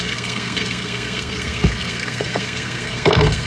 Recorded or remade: remade